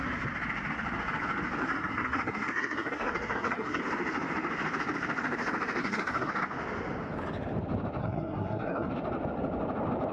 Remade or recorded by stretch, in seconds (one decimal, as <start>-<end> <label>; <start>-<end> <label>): 0.0-1.6 recorded; 1.6-3.8 remade; 3.8-5.8 recorded; 5.8-6.3 remade; 6.3-8.0 recorded; 8.0-8.9 remade; 8.9-10.1 recorded